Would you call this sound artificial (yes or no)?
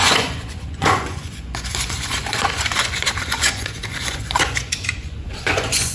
yes